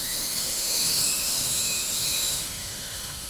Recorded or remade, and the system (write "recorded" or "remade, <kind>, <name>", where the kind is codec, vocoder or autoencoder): remade, autoencoder, DAC-VAE